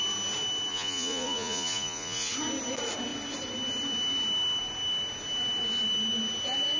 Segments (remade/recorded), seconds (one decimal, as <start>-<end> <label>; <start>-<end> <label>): 0.0-0.7 recorded; 0.7-2.3 remade; 2.3-6.8 recorded